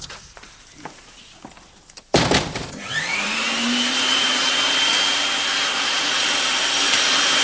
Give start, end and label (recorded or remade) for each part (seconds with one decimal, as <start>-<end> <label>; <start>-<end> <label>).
0.0-4.9 remade; 4.9-5.8 recorded; 5.8-7.4 remade